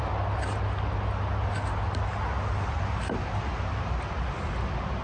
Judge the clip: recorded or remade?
recorded